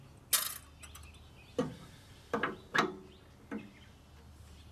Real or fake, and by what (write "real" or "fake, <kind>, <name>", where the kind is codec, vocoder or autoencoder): real